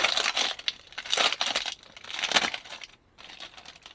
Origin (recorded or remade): recorded